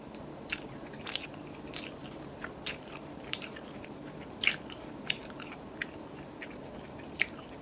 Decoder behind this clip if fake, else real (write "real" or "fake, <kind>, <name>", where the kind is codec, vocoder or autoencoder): fake, vocoder, BigVGAN v2